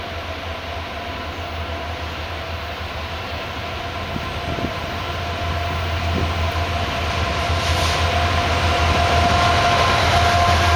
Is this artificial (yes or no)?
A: no